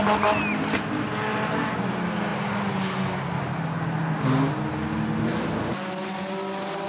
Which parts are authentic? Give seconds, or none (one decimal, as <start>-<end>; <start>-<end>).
0.0-6.9